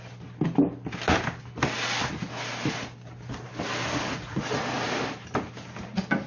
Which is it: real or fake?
real